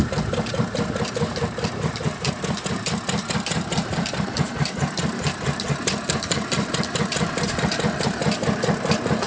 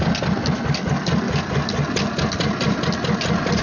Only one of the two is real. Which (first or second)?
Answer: second